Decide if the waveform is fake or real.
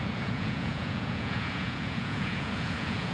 fake